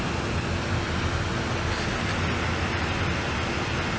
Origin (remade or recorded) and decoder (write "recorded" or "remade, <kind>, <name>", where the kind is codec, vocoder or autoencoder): recorded